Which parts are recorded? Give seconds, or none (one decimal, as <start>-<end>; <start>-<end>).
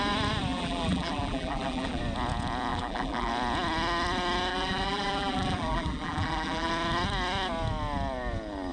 0.0-0.5; 2.0-2.7; 3.3-4.5; 6.7-8.7